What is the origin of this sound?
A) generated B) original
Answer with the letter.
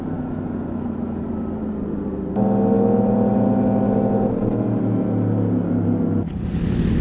B